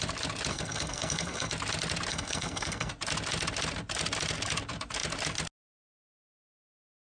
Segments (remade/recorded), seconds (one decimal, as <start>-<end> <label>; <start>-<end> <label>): 0.0-0.5 recorded; 0.5-1.5 remade; 1.5-2.1 recorded; 2.1-2.9 remade; 2.9-7.1 recorded